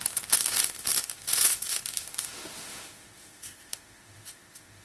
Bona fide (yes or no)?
no